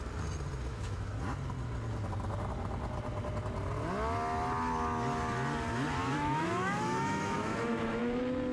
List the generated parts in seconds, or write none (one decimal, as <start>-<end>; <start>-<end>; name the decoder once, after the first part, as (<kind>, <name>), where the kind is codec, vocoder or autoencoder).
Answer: 0.7-1.2 (autoencoder, DAC-VAE); 6.0-8.0